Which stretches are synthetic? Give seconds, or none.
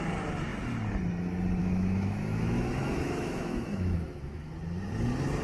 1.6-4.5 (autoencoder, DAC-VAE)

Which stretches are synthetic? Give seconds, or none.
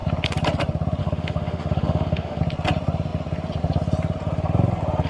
1.0-2.4 (autoencoder, DAC-VAE)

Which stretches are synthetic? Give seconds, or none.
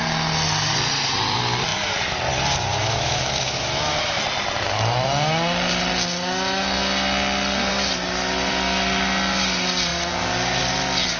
2.7-4.2 (autoencoder, DAC-VAE)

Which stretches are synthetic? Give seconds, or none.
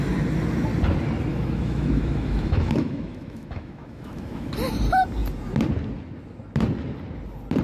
1.3-4.5 (autoencoder, DAC-VAE)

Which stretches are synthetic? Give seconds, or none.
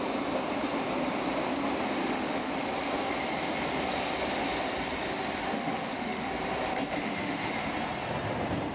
2.0-2.5 (autoencoder, DAC-VAE); 5.5-6.3; 7.0-7.5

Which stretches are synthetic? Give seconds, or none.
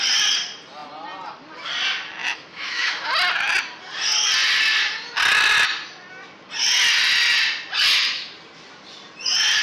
2.2-3.0 (autoencoder, DAC-VAE)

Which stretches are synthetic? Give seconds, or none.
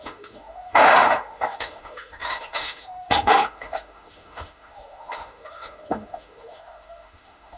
0.0-7.6 (autoencoder, DAC-VAE)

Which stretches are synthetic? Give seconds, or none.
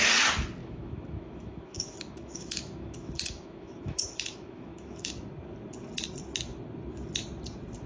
0.6-5.1 (autoencoder, DAC-VAE)